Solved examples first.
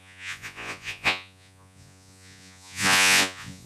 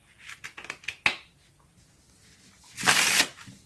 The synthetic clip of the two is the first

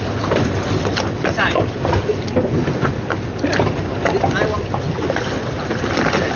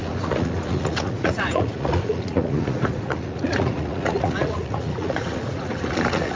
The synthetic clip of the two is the second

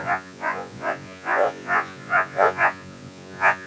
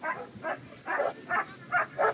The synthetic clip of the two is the first